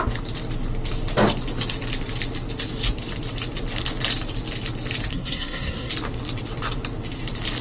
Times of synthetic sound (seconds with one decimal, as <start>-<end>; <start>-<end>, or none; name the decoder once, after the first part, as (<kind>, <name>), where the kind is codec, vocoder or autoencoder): 5.1-5.9 (codec, SNAC)